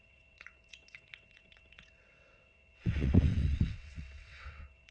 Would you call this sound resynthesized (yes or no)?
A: yes